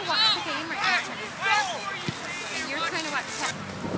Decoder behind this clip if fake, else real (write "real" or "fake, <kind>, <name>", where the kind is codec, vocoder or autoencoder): real